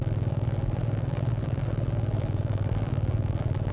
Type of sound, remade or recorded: remade